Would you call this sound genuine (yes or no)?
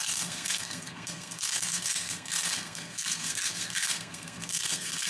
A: no